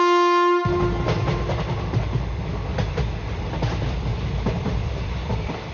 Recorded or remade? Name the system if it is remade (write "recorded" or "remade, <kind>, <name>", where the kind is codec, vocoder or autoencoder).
recorded